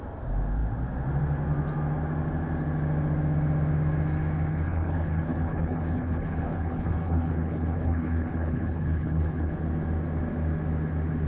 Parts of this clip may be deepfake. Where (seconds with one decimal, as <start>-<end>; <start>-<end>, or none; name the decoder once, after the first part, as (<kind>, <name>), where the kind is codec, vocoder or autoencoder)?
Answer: 4.5-9.5 (codec, HILCodec)